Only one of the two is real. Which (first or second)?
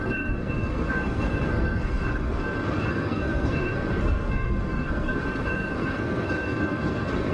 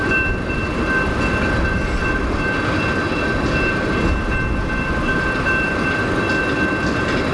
second